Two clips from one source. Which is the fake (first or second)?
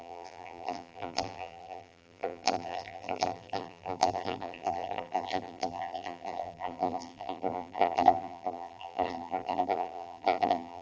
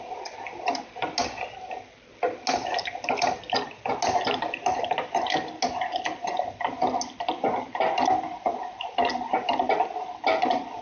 first